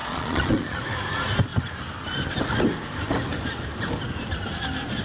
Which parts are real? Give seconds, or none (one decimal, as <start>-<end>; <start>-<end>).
0.8-5.0